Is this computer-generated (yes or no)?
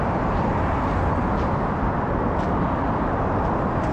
no